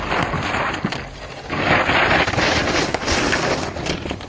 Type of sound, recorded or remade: recorded